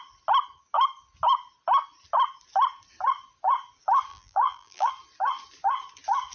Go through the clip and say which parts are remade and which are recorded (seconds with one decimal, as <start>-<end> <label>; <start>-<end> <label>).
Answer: 0.0-4.1 recorded; 4.1-4.9 remade; 4.9-6.3 recorded

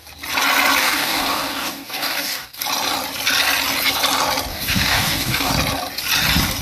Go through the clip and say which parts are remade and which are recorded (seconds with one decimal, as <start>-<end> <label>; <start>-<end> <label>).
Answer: 0.0-0.8 recorded; 0.8-2.6 remade; 2.6-4.5 recorded; 4.5-5.5 remade; 5.5-6.6 recorded

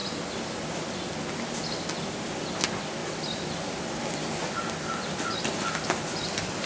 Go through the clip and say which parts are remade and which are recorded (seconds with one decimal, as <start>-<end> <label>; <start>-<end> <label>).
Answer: 0.0-6.7 recorded

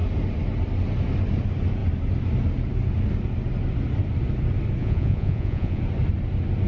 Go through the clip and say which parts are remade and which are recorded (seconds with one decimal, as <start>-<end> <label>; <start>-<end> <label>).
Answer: 0.0-4.8 recorded; 4.8-5.8 remade; 5.8-6.7 recorded

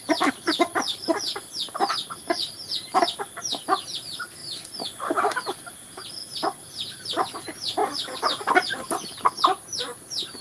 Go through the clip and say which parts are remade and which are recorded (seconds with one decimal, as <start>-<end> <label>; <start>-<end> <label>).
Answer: 0.0-10.4 recorded